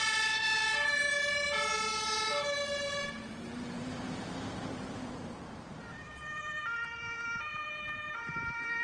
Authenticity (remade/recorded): remade